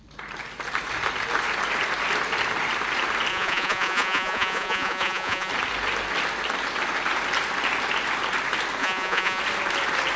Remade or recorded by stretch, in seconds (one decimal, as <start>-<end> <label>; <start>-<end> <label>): 0.0-3.3 recorded; 3.3-5.5 remade; 5.5-8.8 recorded; 8.8-9.4 remade; 9.4-10.2 recorded